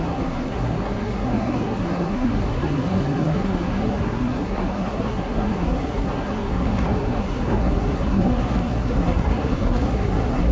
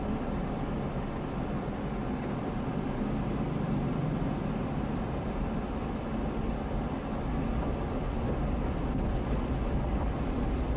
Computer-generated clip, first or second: first